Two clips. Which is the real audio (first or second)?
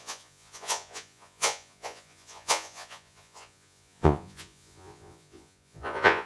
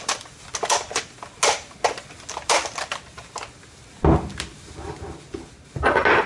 second